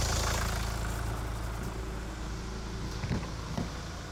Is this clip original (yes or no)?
yes